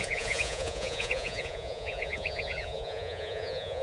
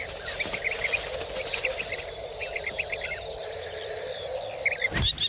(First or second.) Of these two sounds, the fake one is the first